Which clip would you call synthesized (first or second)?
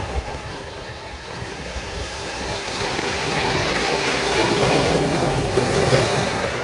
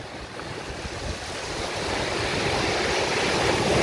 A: first